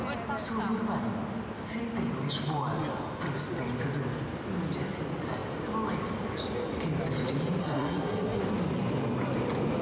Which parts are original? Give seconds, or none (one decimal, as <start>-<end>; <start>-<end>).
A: 0.0-7.6; 8.4-9.8

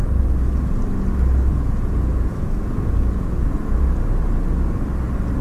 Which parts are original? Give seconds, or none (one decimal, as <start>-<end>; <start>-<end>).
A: 0.0-1.5; 3.8-5.4

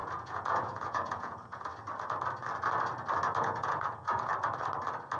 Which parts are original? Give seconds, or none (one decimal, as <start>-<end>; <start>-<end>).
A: 1.7-3.4; 4.3-5.2

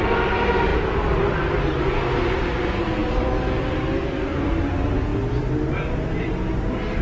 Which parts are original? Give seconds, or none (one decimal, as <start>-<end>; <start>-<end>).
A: 0.0-7.0

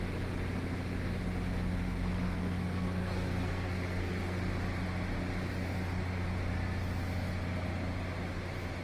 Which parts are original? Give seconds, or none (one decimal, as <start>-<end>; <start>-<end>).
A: 0.0-1.7; 4.4-8.8